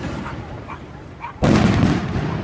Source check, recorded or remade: recorded